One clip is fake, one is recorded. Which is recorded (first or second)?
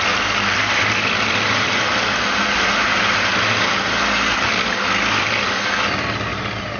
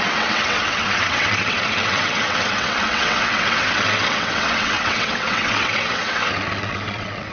first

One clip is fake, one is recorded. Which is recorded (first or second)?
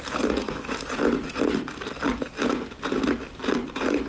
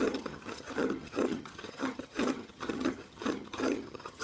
first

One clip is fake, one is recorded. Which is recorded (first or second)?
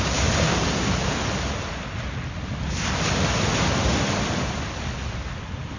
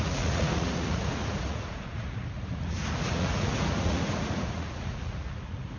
first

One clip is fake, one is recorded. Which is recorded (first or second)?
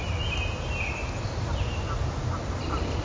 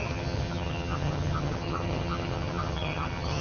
first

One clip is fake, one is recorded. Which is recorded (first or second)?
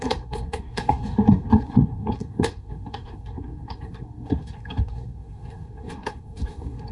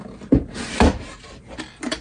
second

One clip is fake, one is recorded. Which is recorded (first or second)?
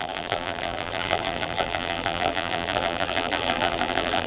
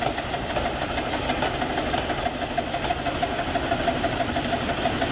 second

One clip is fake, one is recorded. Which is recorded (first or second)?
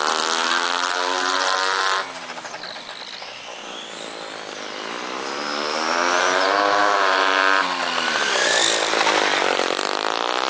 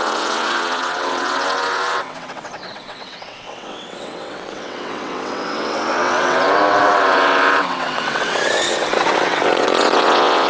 first